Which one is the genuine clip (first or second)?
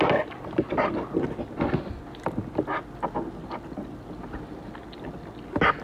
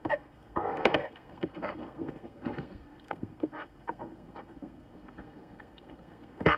first